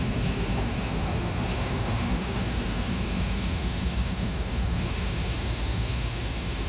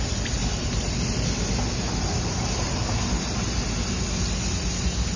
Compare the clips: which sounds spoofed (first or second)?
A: first